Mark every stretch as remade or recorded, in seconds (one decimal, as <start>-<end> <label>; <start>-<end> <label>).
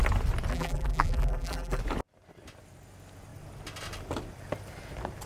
0.0-0.5 recorded; 0.5-1.8 remade; 1.8-5.3 recorded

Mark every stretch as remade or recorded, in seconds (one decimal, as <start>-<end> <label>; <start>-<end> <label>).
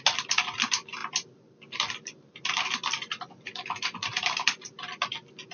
0.0-5.5 recorded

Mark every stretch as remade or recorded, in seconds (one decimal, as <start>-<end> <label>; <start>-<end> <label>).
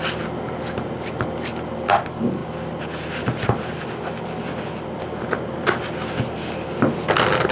0.0-7.5 recorded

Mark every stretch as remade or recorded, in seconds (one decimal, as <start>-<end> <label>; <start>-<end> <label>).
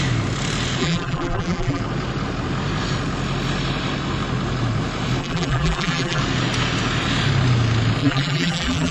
0.0-0.8 recorded; 0.8-1.8 remade; 1.8-5.2 recorded; 5.2-6.2 remade; 6.2-8.0 recorded; 8.0-8.9 remade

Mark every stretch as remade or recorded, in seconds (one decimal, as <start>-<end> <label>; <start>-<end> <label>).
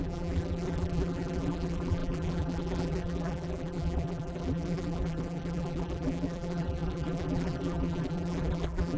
0.0-9.0 remade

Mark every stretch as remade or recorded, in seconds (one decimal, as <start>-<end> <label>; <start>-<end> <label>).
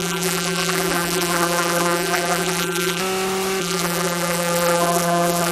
0.0-3.0 remade; 3.0-3.6 recorded; 3.6-5.5 remade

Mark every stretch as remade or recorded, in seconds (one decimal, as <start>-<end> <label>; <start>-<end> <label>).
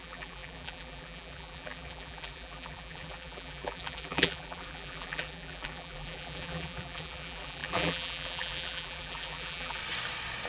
0.0-9.8 remade; 9.8-10.5 recorded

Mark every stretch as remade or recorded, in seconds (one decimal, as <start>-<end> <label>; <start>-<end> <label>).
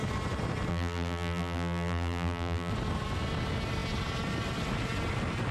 0.0-0.7 recorded; 0.7-2.7 remade; 2.7-5.5 recorded